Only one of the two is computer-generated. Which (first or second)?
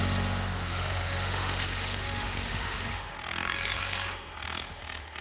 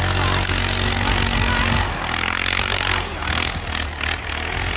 first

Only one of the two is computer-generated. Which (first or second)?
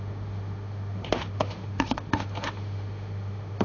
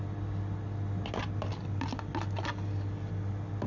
first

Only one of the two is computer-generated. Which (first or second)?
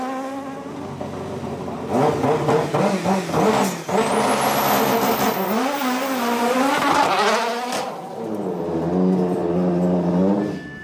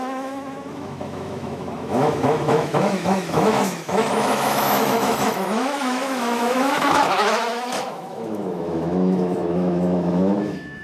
second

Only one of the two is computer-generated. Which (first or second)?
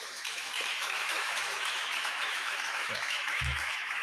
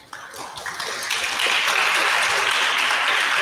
first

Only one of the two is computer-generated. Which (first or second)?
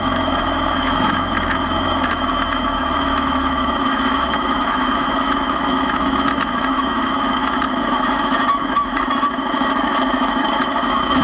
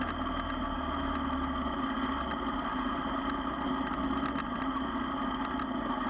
first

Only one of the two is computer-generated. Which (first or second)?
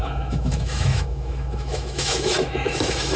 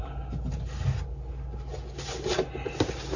first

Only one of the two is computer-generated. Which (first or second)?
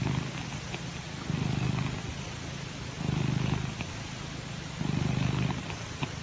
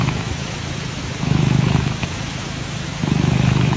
second